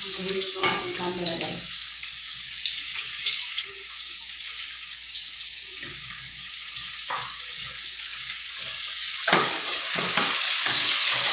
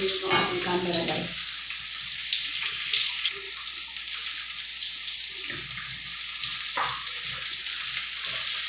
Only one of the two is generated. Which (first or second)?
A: first